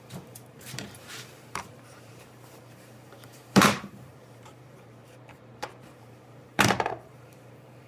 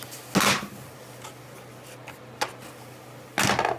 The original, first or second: second